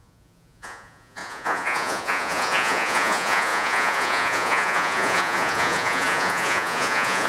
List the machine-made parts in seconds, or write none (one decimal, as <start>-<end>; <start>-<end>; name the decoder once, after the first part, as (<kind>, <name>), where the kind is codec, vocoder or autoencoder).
0.0-7.3 (vocoder, Vocos)